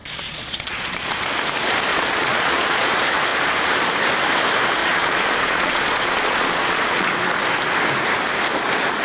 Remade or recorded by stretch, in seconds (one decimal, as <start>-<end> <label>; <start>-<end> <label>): 0.0-1.3 remade; 1.3-1.9 recorded; 1.9-2.9 remade; 2.9-4.8 recorded; 4.8-7.1 remade; 7.1-9.0 recorded